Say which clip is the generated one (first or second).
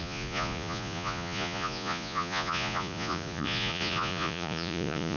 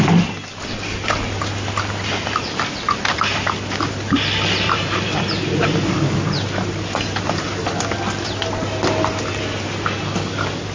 first